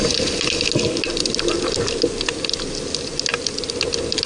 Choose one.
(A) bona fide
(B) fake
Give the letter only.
A